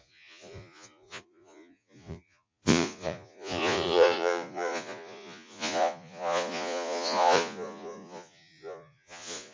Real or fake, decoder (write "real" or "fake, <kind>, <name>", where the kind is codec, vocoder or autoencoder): fake, vocoder, Vocos